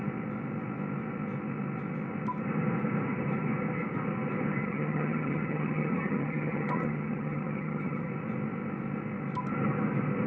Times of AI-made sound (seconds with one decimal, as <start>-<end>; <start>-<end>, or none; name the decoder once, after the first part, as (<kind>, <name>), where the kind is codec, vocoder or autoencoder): 4.6-8.1 (vocoder, HiFi-GAN)

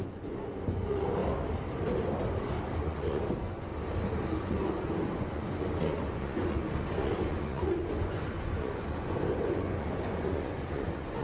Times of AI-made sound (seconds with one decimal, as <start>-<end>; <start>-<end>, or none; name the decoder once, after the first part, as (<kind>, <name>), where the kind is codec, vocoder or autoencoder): 0.0-1.2 (vocoder, Vocos); 2.8-3.7; 4.4-11.2